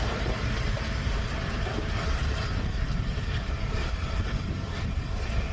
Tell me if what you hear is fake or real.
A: fake